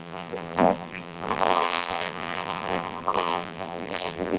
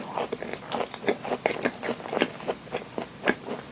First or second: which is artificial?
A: first